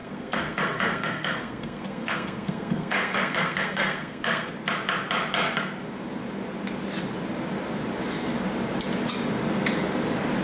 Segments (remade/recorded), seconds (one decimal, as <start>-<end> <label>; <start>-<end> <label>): 0.0-4.5 remade; 4.5-10.4 recorded